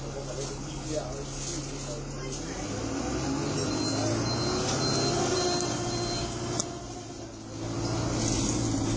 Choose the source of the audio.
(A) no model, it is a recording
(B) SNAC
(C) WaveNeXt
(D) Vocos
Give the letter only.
A